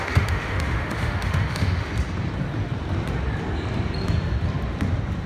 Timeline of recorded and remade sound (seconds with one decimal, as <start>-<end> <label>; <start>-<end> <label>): 0.0-1.9 remade; 1.9-5.3 recorded